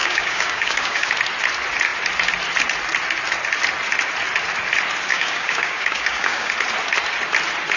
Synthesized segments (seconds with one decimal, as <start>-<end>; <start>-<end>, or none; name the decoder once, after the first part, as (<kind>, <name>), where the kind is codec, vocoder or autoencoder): 0.0-1.1 (codec, DAC); 5.1-6.5